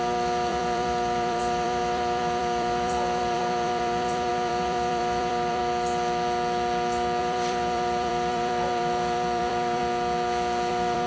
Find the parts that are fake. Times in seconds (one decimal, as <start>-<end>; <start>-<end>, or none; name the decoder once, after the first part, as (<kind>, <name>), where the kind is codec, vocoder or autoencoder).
0.0-5.6 (vocoder, BigVGAN v2); 7.2-9.8; 10.7-11.1

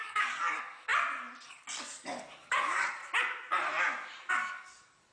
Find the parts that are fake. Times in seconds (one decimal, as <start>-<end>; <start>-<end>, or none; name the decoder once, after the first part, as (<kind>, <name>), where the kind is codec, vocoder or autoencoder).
0.0-0.9 (codec, DAC); 1.8-3.0; 4.3-5.1

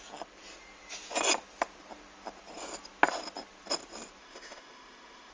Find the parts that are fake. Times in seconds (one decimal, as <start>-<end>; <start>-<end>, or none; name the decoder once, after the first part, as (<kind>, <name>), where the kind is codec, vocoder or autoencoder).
4.2-5.3 (autoencoder, DAC-VAE)

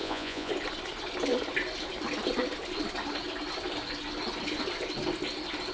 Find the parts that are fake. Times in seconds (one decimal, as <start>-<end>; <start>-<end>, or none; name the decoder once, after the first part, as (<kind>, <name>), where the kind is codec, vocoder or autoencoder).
0.0-0.5 (vocoder, Vocos)

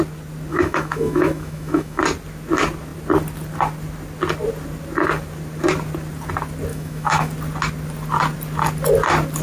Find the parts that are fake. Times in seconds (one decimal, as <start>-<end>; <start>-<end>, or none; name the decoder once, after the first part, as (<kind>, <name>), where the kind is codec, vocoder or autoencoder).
0.5-2.0 (autoencoder, DAC-VAE); 6.7-7.3

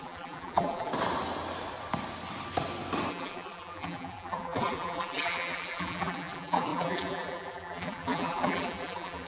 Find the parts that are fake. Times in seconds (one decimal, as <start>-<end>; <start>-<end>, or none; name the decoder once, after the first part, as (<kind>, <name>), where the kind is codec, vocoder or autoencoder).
0.0-0.9 (vocoder, BigVGAN v2); 3.1-9.3

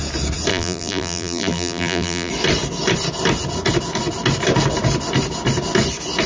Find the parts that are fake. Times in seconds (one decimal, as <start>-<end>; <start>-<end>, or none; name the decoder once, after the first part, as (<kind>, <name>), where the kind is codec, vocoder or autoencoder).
0.5-2.3 (vocoder, BigVGAN v2)

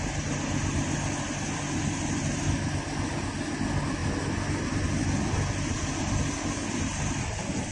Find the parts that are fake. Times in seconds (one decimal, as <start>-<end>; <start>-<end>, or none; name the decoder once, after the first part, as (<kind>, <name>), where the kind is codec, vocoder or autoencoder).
none